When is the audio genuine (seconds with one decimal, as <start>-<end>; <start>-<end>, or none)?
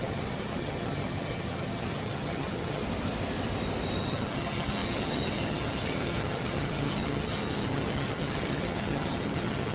2.8-4.0